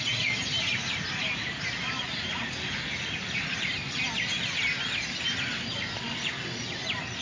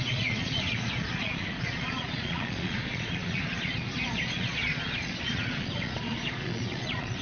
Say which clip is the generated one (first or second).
second